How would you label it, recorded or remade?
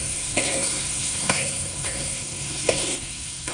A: remade